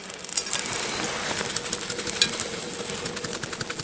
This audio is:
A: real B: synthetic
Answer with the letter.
A